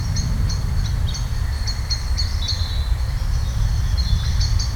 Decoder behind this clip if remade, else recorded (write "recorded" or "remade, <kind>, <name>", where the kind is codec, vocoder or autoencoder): recorded